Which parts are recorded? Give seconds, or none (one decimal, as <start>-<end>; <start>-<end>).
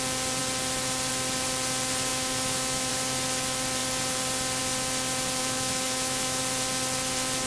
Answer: 0.0-2.1; 2.9-5.4; 6.4-7.5